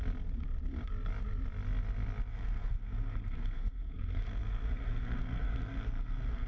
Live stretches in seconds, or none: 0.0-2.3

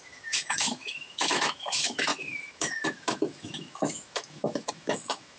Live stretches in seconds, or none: none

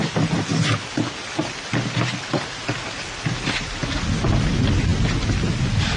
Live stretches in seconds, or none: 0.0-6.0

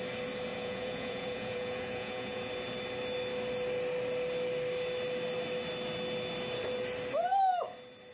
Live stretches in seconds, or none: 0.0-0.5; 2.5-8.1

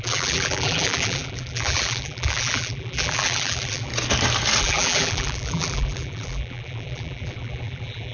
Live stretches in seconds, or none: 3.9-4.6